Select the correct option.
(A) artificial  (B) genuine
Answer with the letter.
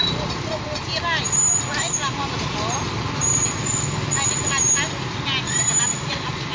B